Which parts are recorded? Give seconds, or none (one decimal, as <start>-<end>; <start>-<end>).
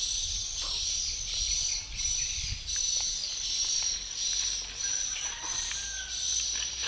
0.0-4.9; 5.7-6.9